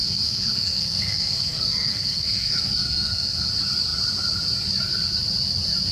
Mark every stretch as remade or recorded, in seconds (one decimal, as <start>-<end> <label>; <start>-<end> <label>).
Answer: 0.0-3.5 remade; 3.5-5.9 recorded